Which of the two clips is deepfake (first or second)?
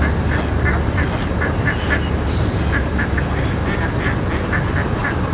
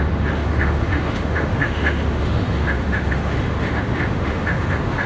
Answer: second